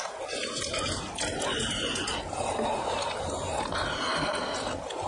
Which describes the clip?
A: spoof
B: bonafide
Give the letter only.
B